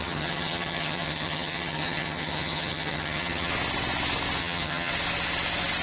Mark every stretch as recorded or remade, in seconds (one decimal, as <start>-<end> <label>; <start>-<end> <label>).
0.0-3.5 remade; 3.5-4.4 recorded; 4.4-4.9 remade; 4.9-5.8 recorded